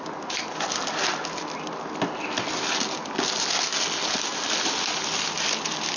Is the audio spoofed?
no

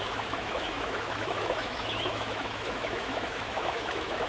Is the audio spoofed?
yes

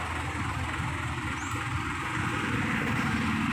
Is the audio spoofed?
no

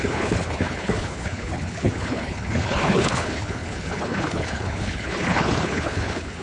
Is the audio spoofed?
yes